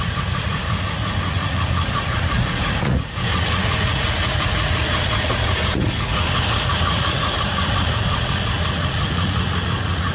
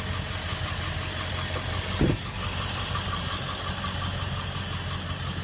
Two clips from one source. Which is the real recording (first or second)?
second